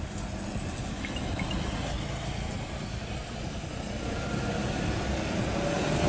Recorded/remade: recorded